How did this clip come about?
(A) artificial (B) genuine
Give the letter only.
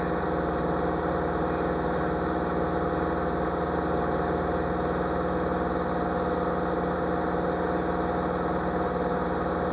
B